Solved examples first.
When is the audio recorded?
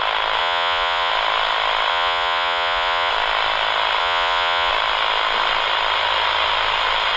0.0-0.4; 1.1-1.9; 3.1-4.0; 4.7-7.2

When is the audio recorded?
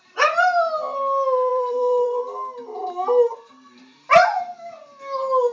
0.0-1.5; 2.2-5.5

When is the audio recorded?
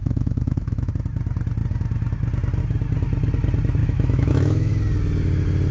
0.9-3.8; 4.7-5.7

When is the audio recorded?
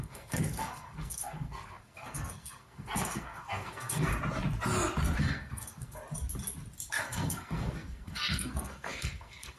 4.1-5.2; 6.0-6.9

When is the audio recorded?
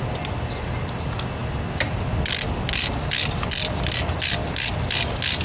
0.0-5.4